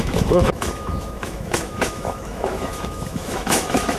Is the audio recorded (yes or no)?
no